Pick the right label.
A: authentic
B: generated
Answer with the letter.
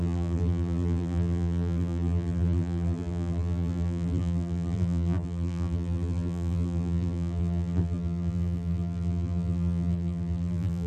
B